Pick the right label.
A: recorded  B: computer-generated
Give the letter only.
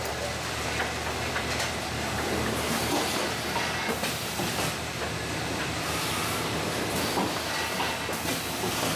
B